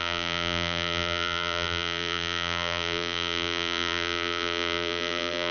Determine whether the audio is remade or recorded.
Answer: remade